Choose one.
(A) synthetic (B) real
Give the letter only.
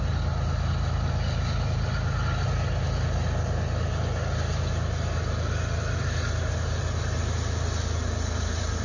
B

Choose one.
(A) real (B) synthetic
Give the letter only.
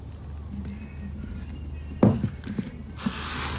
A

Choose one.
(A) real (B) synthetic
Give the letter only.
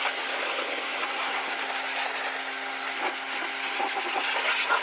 A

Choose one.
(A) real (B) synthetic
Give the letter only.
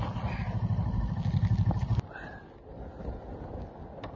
A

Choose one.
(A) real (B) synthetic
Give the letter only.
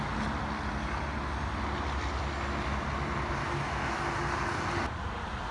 A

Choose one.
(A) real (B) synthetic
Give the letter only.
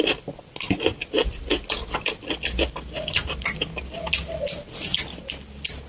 A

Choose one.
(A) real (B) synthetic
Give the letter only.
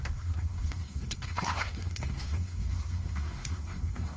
B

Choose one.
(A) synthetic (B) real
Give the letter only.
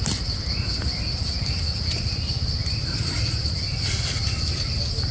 B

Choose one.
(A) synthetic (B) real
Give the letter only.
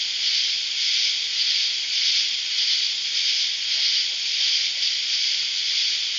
B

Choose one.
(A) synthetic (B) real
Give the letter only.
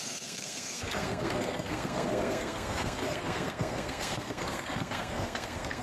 A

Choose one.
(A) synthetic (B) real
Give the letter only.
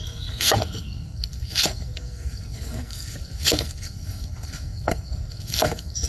A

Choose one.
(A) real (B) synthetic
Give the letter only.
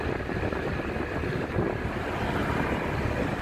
A